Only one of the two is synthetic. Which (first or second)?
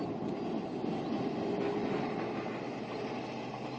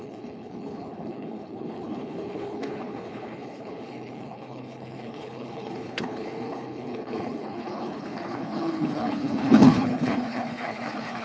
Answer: second